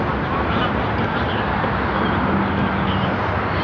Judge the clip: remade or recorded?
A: recorded